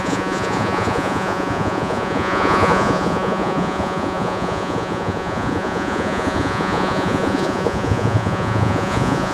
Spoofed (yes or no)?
yes